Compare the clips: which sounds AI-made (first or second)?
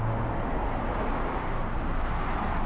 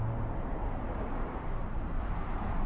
second